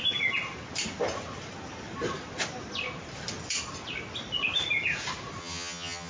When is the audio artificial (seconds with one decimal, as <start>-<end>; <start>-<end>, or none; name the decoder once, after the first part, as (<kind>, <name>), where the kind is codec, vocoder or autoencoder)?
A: 5.4-6.1 (vocoder, HiFi-GAN)